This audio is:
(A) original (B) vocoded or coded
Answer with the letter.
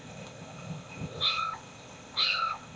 B